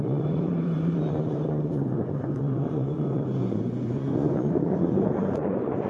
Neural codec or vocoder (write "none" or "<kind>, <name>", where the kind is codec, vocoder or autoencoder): vocoder, Vocos